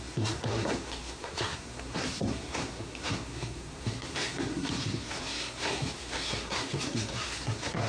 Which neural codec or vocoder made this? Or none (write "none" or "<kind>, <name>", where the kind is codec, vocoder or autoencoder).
codec, SNAC